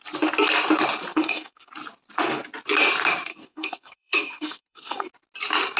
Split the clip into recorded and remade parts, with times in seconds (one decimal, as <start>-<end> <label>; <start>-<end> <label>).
0.0-1.1 recorded; 1.1-1.7 remade; 1.7-3.3 recorded; 3.3-5.1 remade; 5.1-5.8 recorded

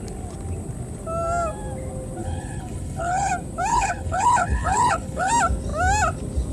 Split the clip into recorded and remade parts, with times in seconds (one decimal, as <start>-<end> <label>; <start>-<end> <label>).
0.0-2.2 recorded; 2.2-3.3 remade; 3.3-3.7 recorded; 3.7-5.3 remade; 5.3-6.5 recorded

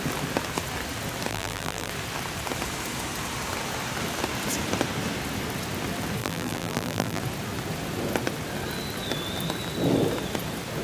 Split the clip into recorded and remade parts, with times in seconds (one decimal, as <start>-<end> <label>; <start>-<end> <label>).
0.0-1.3 recorded; 1.3-1.9 remade; 1.9-6.2 recorded; 6.2-7.2 remade; 7.2-10.8 recorded